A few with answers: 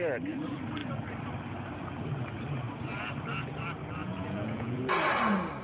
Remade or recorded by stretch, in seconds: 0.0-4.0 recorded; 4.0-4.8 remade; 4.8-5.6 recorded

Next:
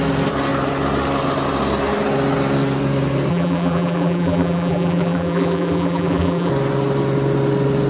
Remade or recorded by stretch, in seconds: 0.0-3.3 recorded; 3.3-6.5 remade; 6.5-7.9 recorded

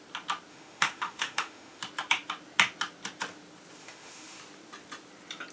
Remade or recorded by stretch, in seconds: 0.0-0.5 recorded; 0.5-1.8 remade; 1.8-3.8 recorded; 3.8-4.4 remade; 4.4-5.5 recorded